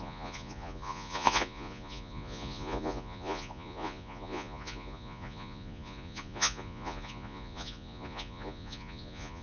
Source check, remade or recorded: remade